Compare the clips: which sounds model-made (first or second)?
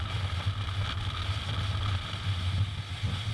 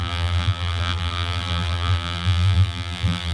second